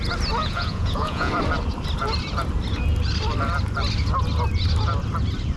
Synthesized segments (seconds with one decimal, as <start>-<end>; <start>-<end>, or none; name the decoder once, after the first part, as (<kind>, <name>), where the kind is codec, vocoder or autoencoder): 0.4-1.3 (vocoder, Vocos)